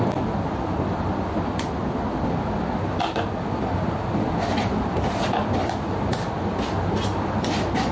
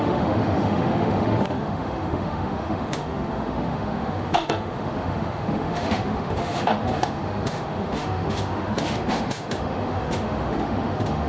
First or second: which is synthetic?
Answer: second